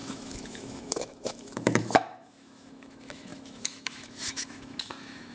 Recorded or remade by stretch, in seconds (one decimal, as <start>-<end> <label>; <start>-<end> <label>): 0.0-5.3 remade